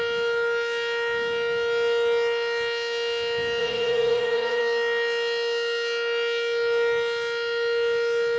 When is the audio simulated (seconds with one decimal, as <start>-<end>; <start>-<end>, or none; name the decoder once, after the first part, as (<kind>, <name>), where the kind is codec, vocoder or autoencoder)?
3.6-4.6 (vocoder, Vocos)